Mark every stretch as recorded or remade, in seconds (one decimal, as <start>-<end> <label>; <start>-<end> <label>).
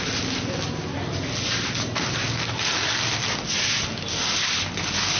0.0-5.2 recorded